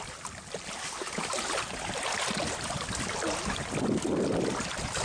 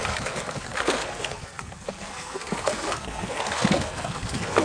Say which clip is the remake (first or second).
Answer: second